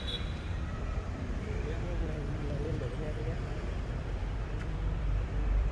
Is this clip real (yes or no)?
no